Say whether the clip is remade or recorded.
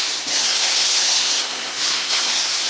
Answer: remade